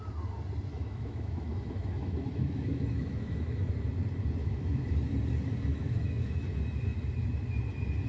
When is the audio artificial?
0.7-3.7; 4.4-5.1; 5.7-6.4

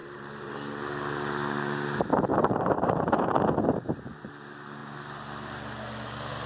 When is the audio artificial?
0.0-0.5; 2.3-4.2

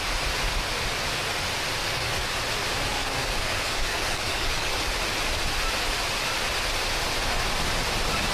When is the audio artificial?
1.8-2.4; 2.9-4.9

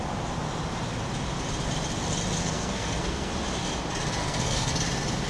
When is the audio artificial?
2.4-3.3; 4.2-4.7

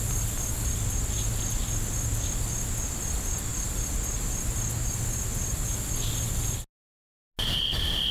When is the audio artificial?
none

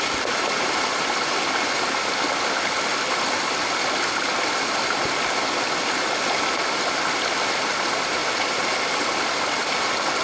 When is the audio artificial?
0.0-8.2; 9.7-10.2